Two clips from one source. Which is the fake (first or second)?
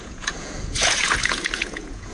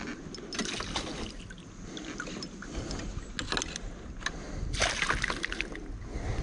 first